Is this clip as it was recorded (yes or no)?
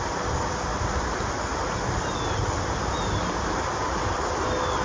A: yes